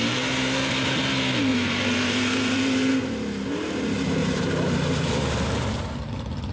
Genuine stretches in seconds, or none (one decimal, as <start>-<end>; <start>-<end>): 0.0-1.5; 2.9-4.2; 5.8-6.5